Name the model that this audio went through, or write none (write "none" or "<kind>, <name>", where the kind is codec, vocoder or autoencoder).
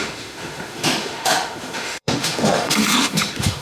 autoencoder, DAC-VAE